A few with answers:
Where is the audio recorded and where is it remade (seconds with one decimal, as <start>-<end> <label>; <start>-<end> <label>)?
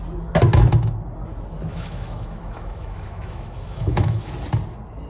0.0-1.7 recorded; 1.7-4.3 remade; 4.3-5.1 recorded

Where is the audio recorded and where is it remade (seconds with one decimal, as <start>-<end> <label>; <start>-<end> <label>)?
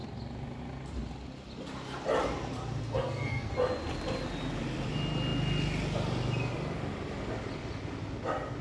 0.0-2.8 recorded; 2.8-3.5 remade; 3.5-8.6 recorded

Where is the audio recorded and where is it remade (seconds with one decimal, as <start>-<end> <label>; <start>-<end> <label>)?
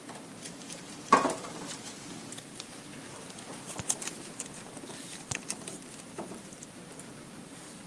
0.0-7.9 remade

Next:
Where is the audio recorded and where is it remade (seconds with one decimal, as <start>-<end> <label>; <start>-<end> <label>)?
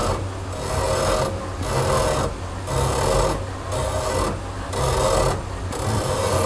0.0-6.5 recorded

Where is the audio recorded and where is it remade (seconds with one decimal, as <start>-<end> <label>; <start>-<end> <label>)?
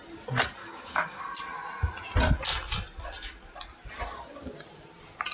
0.0-0.6 recorded; 0.6-1.2 remade; 1.2-5.3 recorded